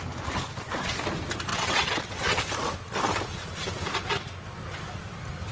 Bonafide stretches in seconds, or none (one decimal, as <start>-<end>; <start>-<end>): 0.0-1.5; 2.4-5.5